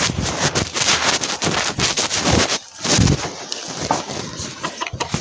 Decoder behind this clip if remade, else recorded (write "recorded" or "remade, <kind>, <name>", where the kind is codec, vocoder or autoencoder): recorded